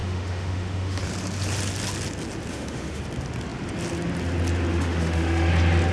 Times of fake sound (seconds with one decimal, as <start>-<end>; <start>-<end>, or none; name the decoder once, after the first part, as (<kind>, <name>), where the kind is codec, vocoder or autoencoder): 0.0-1.0 (autoencoder, DAC-VAE); 2.5-3.0; 4.7-5.5